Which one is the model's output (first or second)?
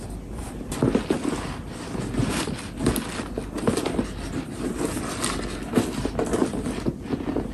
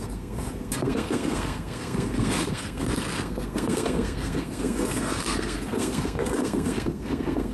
second